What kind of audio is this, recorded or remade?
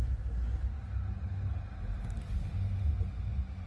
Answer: recorded